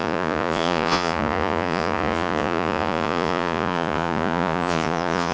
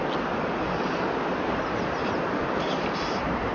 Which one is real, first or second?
second